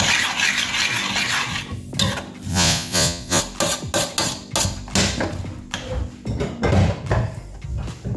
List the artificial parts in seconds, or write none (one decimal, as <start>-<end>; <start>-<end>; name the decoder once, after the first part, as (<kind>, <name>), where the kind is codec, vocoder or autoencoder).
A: 2.5-3.4 (vocoder, Vocos)

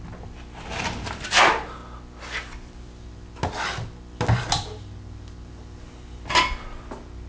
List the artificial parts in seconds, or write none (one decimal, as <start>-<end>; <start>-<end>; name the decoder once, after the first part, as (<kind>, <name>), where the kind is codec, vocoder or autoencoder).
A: none

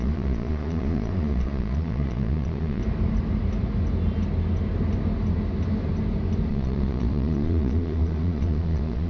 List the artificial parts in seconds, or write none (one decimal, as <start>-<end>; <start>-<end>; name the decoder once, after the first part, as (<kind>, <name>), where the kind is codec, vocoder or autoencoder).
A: 0.0-2.8 (vocoder, Vocos); 6.5-9.1

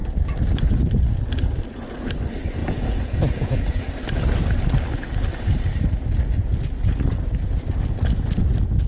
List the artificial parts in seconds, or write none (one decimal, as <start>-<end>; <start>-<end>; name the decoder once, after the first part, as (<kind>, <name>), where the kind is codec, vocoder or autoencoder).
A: 2.6-3.9 (vocoder, Vocos)

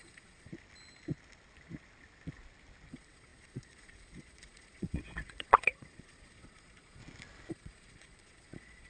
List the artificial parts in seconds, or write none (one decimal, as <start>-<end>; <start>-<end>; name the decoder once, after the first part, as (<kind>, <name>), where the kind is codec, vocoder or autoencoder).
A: 0.0-0.5 (vocoder, Vocos); 2.9-7.0; 7.5-8.9

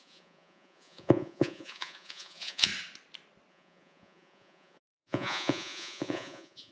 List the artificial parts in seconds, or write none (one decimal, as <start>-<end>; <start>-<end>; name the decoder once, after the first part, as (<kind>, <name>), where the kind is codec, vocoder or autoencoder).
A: 0.0-2.7 (vocoder, Vocos); 3.5-6.7

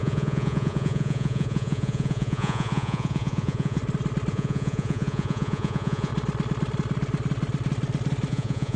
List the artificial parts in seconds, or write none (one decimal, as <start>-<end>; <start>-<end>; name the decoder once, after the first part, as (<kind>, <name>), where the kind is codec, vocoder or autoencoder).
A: 0.0-3.8 (vocoder, Vocos); 4.3-6.1; 8.3-8.8

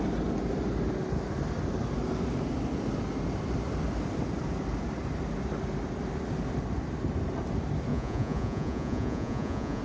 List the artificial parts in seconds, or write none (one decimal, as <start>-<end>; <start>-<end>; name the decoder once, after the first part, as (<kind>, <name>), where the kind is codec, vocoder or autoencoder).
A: 7.9-9.8 (vocoder, Vocos)